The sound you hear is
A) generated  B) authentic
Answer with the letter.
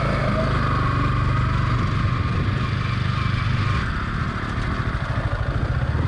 B